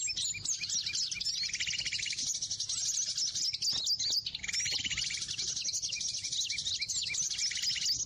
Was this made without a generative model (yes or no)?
yes